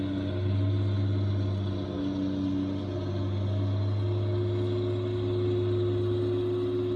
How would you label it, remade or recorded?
recorded